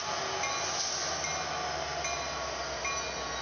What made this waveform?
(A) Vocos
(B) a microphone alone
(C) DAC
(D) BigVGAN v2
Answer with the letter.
B